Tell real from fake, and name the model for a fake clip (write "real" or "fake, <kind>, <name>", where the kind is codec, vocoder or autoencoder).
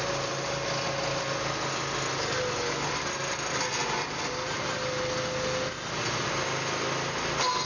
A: real